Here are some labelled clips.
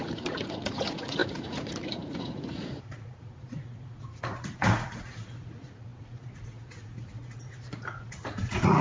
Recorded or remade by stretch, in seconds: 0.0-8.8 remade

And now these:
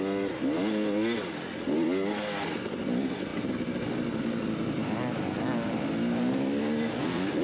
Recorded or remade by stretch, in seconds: 0.0-7.4 recorded